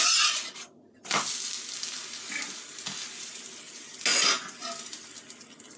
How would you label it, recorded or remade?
recorded